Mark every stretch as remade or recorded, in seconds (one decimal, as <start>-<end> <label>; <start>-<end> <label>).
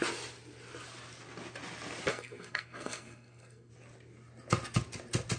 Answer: 0.0-2.1 recorded; 2.1-3.7 remade; 3.7-5.4 recorded